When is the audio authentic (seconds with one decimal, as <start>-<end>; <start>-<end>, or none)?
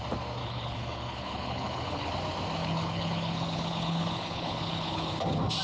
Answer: 0.0-0.4; 2.1-2.6; 5.1-5.6